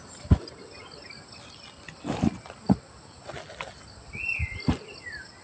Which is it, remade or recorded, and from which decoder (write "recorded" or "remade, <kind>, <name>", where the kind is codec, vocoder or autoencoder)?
recorded